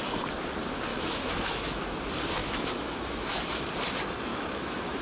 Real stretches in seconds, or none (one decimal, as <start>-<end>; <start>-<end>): 0.0-0.9; 1.8-2.4; 3.7-4.3